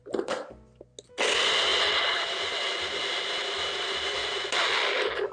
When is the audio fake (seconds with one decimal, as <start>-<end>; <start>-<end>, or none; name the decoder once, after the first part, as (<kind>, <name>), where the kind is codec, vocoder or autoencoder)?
0.0-0.5 (vocoder, BigVGAN v2)